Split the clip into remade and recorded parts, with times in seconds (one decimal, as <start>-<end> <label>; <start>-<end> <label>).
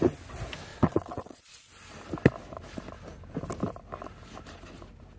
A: 0.0-0.7 recorded; 0.7-1.7 remade; 1.7-5.2 recorded